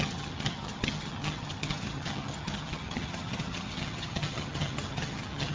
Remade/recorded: remade